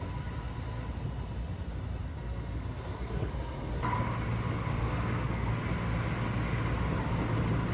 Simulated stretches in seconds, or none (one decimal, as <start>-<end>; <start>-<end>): 2.0-3.7; 4.7-5.5

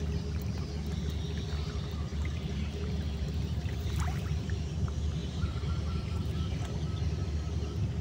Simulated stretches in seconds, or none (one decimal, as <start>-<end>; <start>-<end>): 2.1-3.9; 5.2-6.6